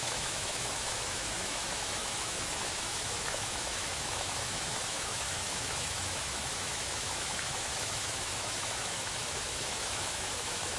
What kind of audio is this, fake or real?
fake